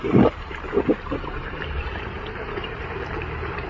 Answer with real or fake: fake